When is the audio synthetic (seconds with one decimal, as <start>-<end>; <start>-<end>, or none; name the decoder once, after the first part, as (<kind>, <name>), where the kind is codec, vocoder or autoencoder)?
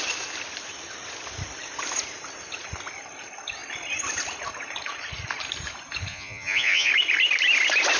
6.1-6.9 (vocoder, Vocos)